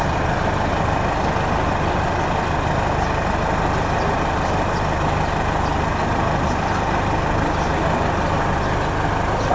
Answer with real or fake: real